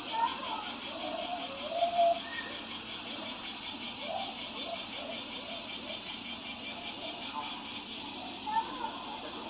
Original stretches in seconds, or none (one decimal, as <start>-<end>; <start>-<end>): 0.0-9.5